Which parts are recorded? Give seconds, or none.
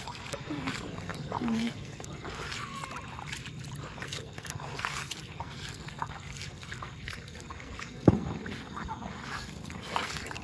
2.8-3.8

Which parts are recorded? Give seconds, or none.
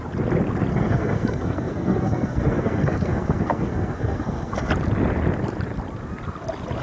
0.0-0.7; 4.7-6.8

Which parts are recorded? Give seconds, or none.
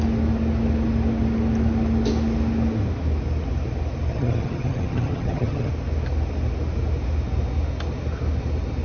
0.0-4.1; 5.7-8.8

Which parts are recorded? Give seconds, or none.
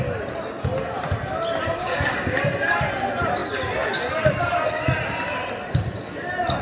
0.0-1.8; 2.4-6.6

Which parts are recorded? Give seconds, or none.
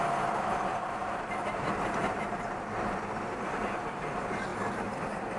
0.0-1.0; 3.9-4.5; 5.0-5.4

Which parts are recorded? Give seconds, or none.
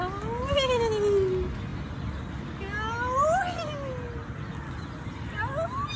0.0-6.0